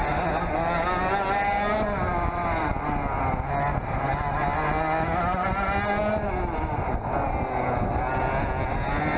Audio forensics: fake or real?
real